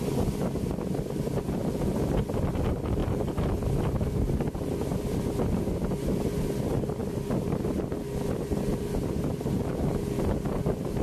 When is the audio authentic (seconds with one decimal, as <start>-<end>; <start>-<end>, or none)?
0.0-3.0; 3.6-11.0